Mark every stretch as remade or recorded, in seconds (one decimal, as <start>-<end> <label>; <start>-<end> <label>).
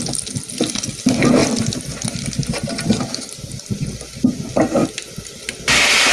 0.0-6.1 recorded